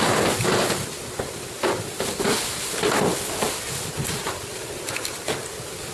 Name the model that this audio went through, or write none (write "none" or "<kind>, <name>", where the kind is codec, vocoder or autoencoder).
none